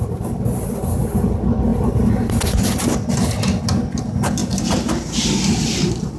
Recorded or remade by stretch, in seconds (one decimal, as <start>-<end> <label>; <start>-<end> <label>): 0.0-6.2 recorded